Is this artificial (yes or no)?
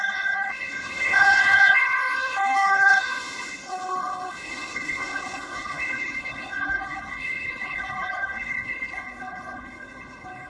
yes